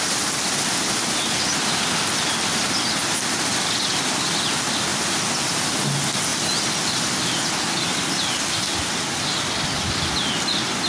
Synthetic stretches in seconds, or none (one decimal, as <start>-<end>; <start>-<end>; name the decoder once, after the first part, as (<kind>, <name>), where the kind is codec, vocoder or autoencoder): none